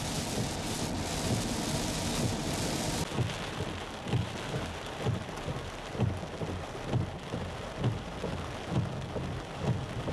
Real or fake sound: real